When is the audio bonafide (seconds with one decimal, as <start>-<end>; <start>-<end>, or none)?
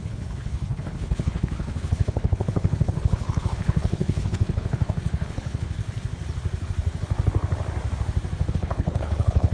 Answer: 5.8-8.5